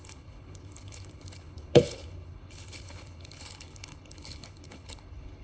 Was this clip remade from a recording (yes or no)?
yes